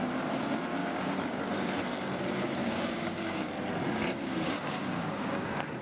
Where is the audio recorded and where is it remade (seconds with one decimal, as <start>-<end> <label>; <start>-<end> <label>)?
0.0-0.8 recorded; 0.8-1.4 remade; 1.4-2.6 recorded; 2.6-3.5 remade; 3.5-3.9 recorded; 3.9-5.8 remade